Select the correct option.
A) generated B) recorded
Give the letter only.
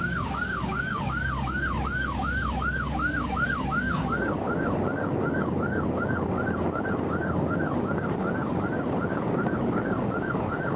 A